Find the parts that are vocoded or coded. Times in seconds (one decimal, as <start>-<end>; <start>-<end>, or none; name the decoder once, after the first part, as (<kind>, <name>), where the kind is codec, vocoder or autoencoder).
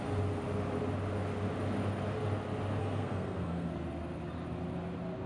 2.8-3.7 (codec, SNAC)